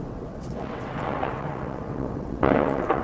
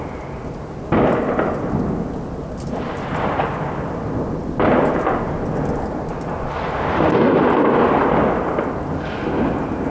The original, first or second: second